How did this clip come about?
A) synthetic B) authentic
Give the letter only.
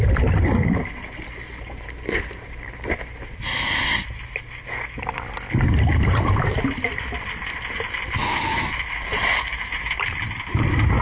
B